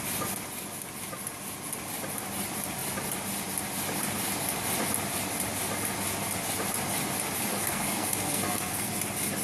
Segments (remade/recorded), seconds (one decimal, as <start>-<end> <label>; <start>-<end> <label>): 0.0-7.5 recorded; 7.5-8.9 remade; 8.9-9.4 recorded